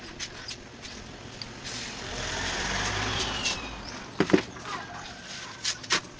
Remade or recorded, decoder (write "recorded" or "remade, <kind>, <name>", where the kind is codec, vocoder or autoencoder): remade, vocoder, BigVGAN v2